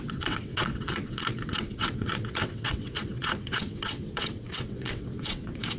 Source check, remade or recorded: remade